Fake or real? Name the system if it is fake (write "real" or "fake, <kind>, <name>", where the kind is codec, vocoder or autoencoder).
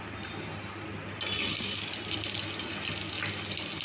real